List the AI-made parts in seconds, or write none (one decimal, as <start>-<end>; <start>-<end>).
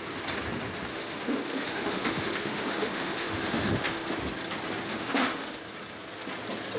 0.9-4.1; 4.9-5.6